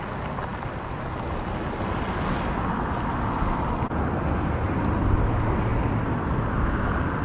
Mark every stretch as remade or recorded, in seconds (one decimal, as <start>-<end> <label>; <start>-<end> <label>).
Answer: 0.0-7.2 recorded